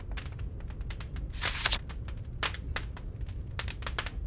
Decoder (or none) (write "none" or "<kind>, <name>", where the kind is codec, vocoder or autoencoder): none